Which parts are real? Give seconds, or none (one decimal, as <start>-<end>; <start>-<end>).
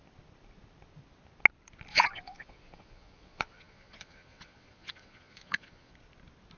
0.0-1.9; 5.9-6.6